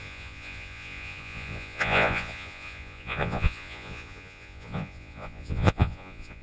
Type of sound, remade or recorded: remade